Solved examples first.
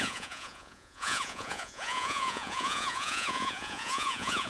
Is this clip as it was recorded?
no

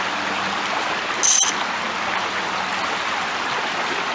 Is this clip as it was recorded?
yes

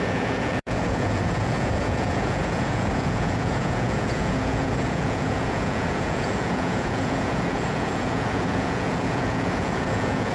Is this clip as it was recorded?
no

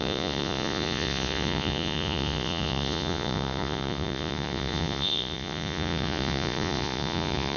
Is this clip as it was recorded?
no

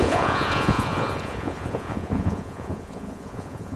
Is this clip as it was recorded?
no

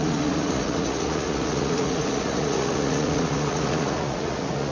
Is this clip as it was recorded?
no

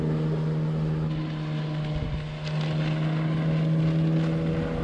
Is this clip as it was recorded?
yes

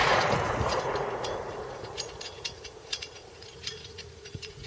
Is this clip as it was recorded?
no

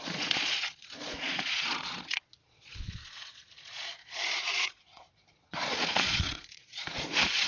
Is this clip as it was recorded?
no